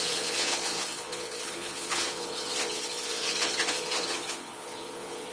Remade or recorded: remade